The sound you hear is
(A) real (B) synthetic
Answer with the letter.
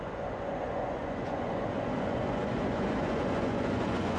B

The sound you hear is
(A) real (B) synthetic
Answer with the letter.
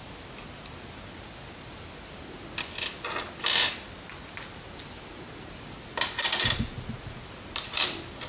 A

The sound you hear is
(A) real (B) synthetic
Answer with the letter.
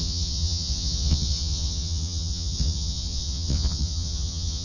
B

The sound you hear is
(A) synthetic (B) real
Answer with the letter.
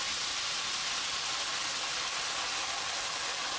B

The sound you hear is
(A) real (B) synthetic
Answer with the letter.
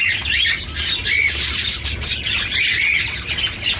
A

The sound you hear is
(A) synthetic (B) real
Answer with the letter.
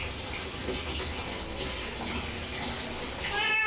B